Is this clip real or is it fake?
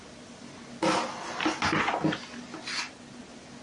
real